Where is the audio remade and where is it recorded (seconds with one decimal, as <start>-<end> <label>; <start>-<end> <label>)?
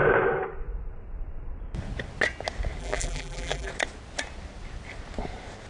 0.0-2.8 recorded; 2.8-3.7 remade; 3.7-5.7 recorded